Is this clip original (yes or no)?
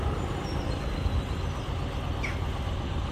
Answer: yes